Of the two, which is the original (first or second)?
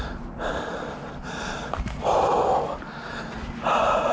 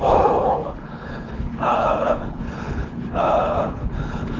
first